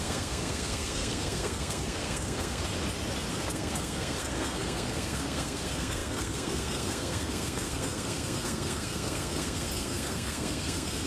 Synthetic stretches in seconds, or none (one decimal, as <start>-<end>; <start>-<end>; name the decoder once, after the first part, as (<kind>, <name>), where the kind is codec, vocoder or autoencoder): 0.0-2.6 (codec, SNAC); 3.3-11.1